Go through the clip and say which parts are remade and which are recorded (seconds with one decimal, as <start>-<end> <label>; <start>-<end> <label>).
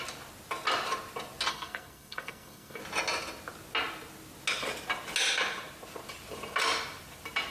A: 0.0-1.5 recorded; 1.5-2.8 remade; 2.8-7.5 recorded